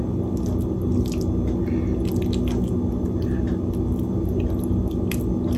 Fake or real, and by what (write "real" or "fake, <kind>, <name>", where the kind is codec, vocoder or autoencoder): real